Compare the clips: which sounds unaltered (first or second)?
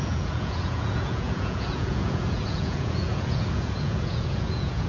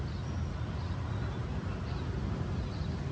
second